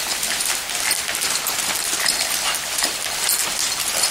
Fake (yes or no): no